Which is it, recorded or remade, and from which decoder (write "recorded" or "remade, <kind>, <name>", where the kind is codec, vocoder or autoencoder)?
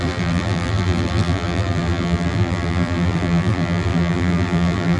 remade, vocoder, BigVGAN v2